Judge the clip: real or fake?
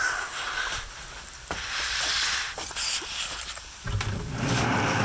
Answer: real